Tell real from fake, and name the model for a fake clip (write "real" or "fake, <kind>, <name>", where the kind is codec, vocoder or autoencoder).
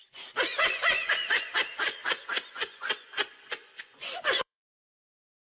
fake, vocoder, Vocos